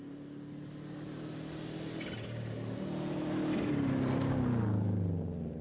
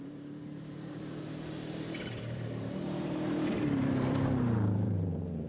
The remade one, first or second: second